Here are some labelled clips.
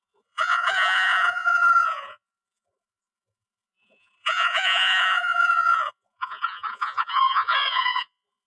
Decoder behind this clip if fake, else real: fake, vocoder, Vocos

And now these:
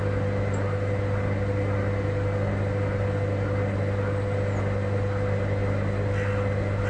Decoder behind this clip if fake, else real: real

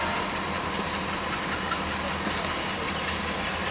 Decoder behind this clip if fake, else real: real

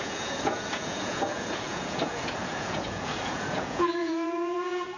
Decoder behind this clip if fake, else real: fake, vocoder, Vocos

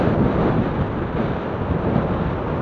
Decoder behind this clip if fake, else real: real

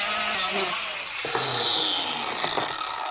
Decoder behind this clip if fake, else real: real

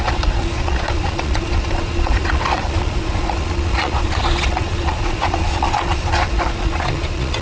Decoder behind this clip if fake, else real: fake, vocoder, Vocos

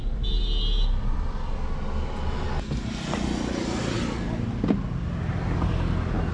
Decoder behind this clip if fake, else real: real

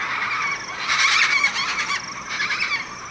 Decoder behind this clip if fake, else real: real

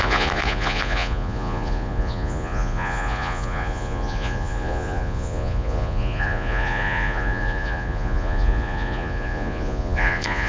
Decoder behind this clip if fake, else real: fake, vocoder, Vocos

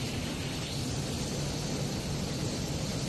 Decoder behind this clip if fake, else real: real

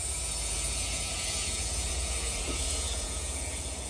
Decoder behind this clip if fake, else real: fake, vocoder, Vocos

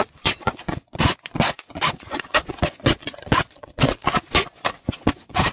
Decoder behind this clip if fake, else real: fake, vocoder, Vocos